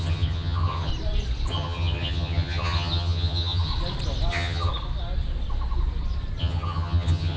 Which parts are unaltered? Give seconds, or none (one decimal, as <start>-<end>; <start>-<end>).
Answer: 0.9-1.5; 3.7-4.3; 4.7-6.4